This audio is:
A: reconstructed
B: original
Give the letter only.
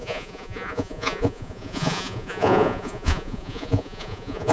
A